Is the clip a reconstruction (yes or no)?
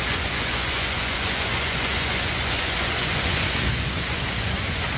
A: yes